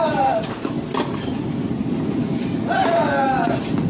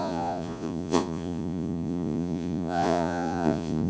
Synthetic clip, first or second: second